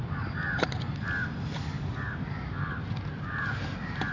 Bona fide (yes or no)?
yes